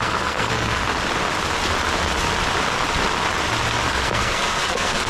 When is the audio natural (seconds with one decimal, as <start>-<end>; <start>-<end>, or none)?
0.8-3.9